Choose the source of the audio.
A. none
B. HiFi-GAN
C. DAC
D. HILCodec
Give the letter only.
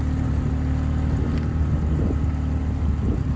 A